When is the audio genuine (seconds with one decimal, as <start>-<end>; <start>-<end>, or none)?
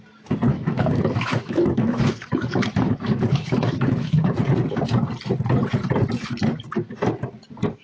0.0-0.5; 4.3-7.8